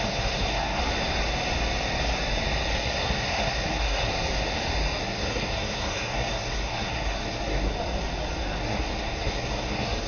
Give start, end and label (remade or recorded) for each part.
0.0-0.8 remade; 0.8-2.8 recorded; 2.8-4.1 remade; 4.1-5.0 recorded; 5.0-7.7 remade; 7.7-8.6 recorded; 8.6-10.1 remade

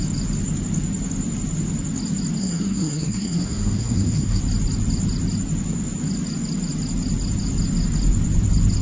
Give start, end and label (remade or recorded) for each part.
0.0-2.4 recorded; 2.4-4.4 remade; 4.4-8.8 recorded

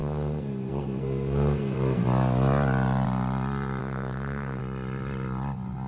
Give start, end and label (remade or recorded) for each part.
0.0-2.0 remade; 2.0-3.8 recorded; 3.8-4.6 remade; 4.6-5.9 recorded